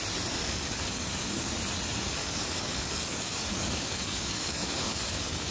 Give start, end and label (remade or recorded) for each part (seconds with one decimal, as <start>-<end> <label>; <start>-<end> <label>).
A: 0.0-0.4 recorded; 0.4-1.5 remade; 1.5-2.2 recorded; 2.2-5.5 remade